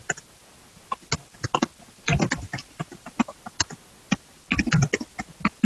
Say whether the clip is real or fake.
real